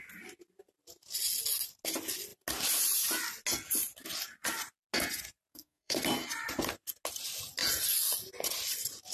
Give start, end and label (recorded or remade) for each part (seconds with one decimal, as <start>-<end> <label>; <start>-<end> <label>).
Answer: 0.0-5.5 recorded; 5.5-6.0 remade; 6.0-9.1 recorded